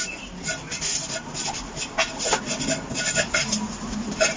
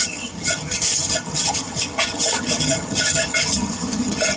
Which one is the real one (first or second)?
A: first